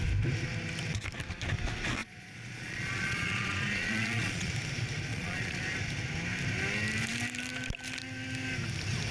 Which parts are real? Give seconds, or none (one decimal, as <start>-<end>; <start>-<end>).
0.0-2.0; 4.5-5.1; 5.6-9.1